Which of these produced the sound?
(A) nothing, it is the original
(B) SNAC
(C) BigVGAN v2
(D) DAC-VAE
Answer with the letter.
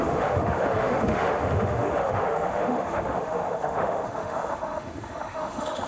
D